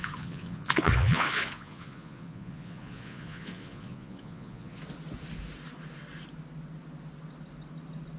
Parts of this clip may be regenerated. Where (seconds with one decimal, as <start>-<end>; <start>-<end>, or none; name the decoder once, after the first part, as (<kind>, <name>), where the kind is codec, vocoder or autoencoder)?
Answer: 0.0-4.8 (vocoder, Vocos)